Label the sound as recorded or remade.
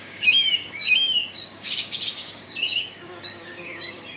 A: remade